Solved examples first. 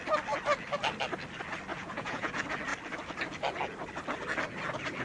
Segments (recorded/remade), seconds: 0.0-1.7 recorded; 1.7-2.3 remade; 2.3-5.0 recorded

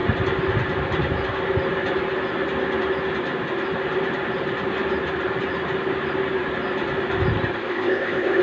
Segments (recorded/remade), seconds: 0.0-7.6 recorded; 7.6-8.4 remade

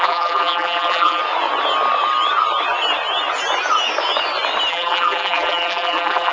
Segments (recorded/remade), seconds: 0.0-1.2 remade; 1.2-4.7 recorded; 4.7-6.3 remade

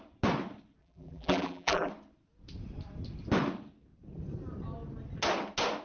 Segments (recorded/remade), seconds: 0.0-0.8 recorded; 0.8-1.9 remade; 1.9-5.8 recorded

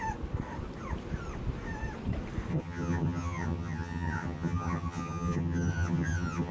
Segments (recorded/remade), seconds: 0.0-2.5 recorded; 2.5-6.5 remade

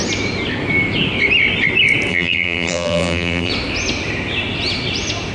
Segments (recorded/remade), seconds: 0.0-2.1 recorded; 2.1-3.5 remade; 3.5-5.3 recorded

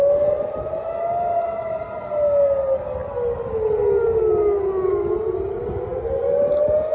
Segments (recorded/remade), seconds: 0.0-6.9 recorded

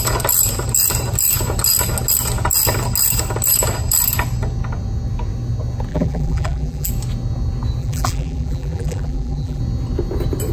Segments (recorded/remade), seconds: 0.0-5.9 recorded; 5.9-6.9 remade; 6.9-7.8 recorded; 7.8-9.6 remade; 9.6-10.5 recorded